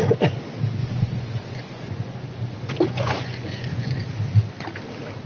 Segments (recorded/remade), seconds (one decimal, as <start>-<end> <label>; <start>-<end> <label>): 0.0-0.8 recorded; 0.8-4.0 remade; 4.0-5.3 recorded